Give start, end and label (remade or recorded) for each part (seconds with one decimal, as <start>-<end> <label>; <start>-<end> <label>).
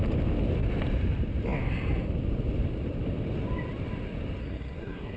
0.0-4.4 recorded; 4.4-5.2 remade